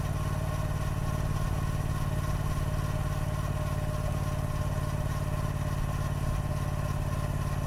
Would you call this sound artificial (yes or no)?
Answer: no